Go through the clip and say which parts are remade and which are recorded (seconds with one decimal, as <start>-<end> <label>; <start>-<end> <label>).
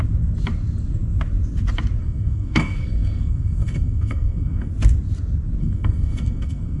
0.0-2.0 recorded; 2.0-4.7 remade; 4.7-5.6 recorded; 5.6-6.8 remade